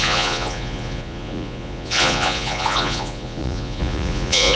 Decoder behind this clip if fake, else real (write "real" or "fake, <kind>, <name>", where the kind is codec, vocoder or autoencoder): fake, vocoder, Vocos